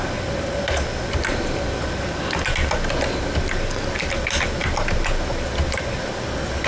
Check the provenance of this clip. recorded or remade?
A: recorded